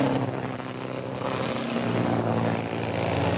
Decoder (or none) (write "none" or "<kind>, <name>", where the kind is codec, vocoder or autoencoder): none